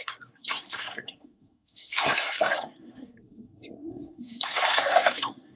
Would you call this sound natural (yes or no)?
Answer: no